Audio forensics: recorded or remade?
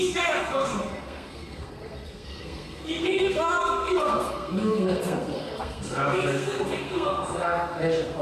remade